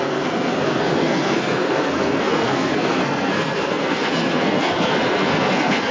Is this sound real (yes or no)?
no